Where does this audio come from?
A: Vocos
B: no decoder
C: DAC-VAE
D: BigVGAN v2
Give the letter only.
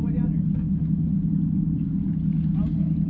B